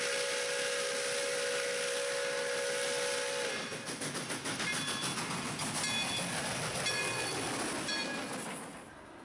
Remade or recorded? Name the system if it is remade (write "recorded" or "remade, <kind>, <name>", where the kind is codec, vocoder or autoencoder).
recorded